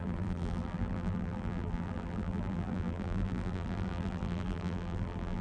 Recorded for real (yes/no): no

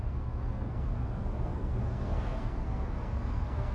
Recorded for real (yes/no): no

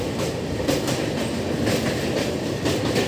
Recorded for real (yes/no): yes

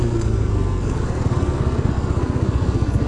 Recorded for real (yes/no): no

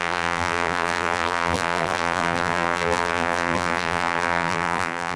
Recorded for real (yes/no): no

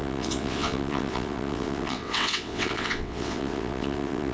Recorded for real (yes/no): no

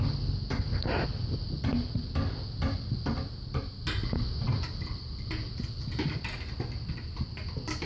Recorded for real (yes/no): yes